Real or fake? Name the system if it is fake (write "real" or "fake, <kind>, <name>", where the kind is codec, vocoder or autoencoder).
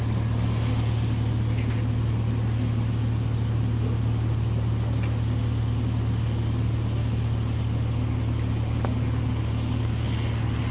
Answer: real